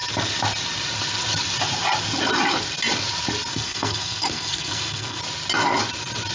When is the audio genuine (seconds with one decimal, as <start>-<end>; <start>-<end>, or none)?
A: 0.0-3.5; 5.2-6.3